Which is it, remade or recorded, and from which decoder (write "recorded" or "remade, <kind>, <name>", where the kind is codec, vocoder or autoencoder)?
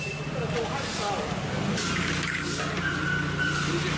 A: recorded